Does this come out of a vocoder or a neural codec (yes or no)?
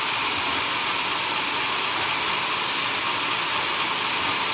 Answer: no